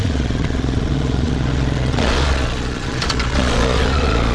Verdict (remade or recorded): remade